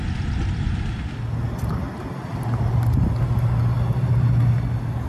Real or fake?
real